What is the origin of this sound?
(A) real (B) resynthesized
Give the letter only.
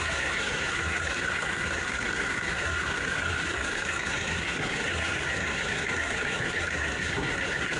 B